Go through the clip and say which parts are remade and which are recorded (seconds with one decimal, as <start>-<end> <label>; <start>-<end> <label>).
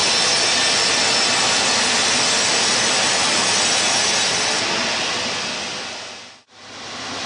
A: 0.0-7.3 recorded